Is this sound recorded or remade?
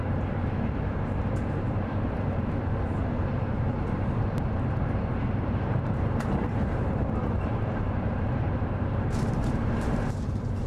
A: remade